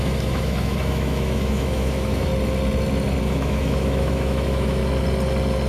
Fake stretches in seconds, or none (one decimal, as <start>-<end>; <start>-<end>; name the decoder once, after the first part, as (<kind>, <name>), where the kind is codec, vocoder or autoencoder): 0.0-2.3 (autoencoder, DAC-VAE); 3.2-4.8